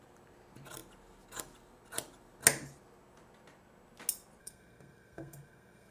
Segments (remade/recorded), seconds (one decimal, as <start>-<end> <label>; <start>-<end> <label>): 0.0-4.4 recorded; 4.4-5.9 remade